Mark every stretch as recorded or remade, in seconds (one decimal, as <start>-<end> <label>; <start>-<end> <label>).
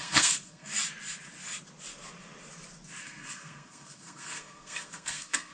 0.0-0.7 remade; 0.7-3.0 recorded; 3.0-5.5 remade